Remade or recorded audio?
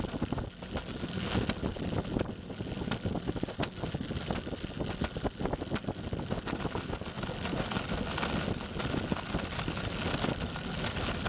recorded